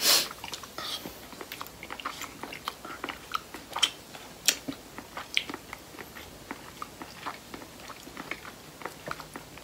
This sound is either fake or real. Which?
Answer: real